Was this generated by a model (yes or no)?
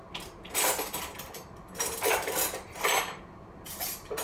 no